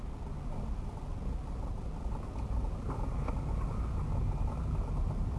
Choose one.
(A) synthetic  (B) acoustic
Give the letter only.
B